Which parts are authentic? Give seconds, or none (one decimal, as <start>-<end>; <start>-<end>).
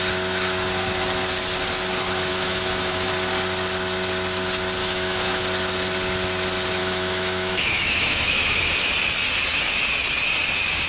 0.0-2.3; 3.1-4.8; 5.4-6.8; 8.9-10.9